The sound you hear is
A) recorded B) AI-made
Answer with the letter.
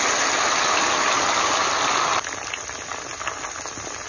A